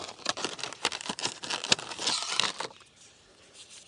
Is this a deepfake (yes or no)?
no